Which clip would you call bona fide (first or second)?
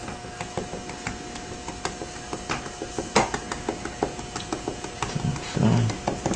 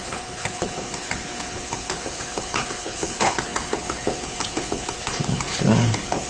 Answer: first